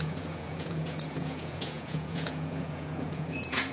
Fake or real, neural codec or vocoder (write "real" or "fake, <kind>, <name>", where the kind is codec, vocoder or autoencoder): fake, vocoder, Vocos